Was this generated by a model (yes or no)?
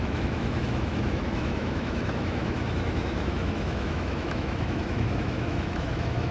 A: yes